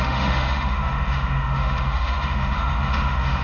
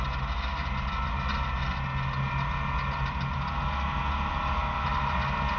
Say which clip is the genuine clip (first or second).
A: second